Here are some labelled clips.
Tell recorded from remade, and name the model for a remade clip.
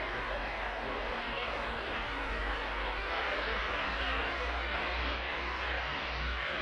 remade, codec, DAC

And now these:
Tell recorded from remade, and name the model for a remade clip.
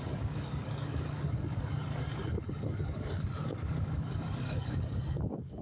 remade, codec, DAC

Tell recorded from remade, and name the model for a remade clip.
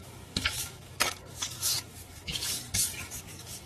remade, codec, DAC